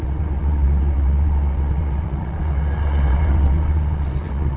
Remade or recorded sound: remade